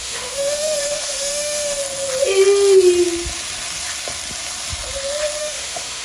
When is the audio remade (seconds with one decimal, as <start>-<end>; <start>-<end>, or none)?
0.0-1.8; 5.4-6.0